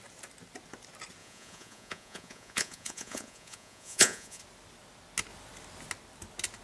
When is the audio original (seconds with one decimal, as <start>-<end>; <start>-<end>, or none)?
0.0-1.2; 4.4-6.6